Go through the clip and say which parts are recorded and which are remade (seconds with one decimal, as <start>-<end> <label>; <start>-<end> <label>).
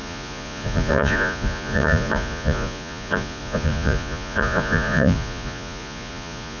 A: 0.0-6.6 remade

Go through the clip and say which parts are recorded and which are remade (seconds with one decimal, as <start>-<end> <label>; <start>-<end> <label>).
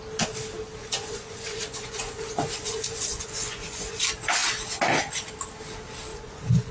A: 0.0-0.8 recorded; 0.8-4.0 remade; 4.0-6.1 recorded; 6.1-6.7 remade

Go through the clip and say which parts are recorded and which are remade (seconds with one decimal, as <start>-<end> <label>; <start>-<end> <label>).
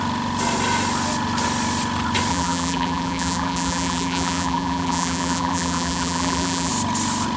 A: 0.0-2.3 recorded; 2.3-6.7 remade; 6.7-7.4 recorded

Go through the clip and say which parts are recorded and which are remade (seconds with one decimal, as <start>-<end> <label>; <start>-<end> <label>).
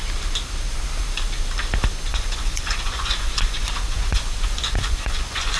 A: 0.0-2.1 recorded; 2.1-5.6 remade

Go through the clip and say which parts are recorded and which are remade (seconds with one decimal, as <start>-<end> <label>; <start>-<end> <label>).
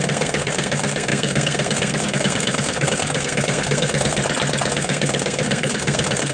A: 0.0-4.2 remade; 4.2-4.7 recorded; 4.7-6.3 remade